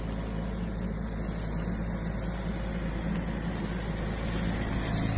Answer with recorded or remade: recorded